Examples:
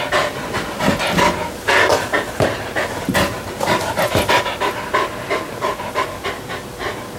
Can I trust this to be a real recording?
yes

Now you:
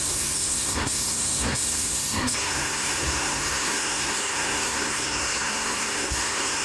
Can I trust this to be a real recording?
no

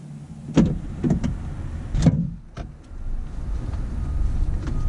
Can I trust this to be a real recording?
yes